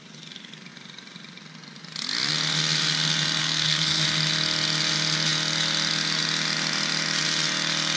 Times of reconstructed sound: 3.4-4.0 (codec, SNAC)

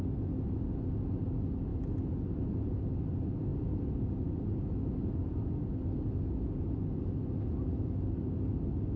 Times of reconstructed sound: none

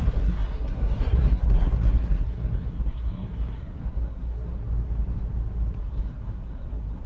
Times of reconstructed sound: 0.0-4.5 (codec, SNAC); 5.8-7.1

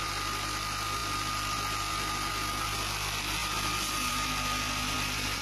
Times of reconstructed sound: none

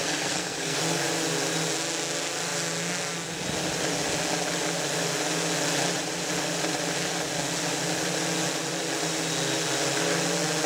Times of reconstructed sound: 0.0-0.8 (codec, SNAC)

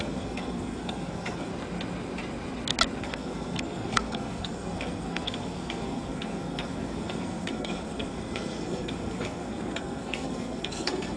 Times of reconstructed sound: 0.0-1.5 (codec, SNAC); 3.0-11.2